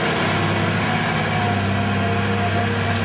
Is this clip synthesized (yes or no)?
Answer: no